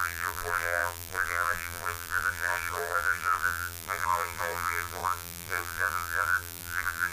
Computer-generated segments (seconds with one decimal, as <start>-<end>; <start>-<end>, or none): 0.0-7.1